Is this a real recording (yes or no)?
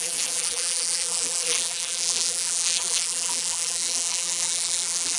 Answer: no